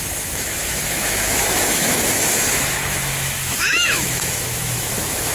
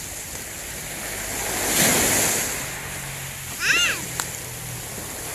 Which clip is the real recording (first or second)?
second